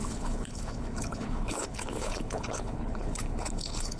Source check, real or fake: fake